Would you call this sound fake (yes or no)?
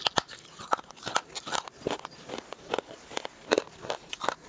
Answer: no